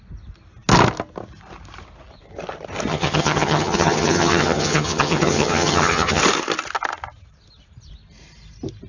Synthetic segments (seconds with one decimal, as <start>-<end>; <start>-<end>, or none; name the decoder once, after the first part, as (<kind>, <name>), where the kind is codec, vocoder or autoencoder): 2.9-6.2 (vocoder, HiFi-GAN)